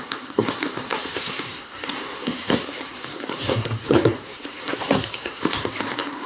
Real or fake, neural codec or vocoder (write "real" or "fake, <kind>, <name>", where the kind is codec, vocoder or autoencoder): fake, codec, SNAC